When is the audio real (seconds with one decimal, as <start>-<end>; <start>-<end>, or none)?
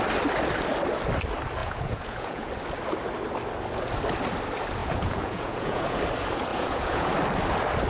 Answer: 0.0-1.6; 2.5-4.8; 6.0-6.5; 7.1-7.9